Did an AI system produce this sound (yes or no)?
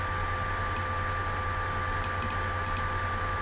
no